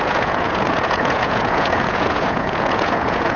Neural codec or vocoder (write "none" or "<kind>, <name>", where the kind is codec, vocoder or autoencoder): vocoder, Vocos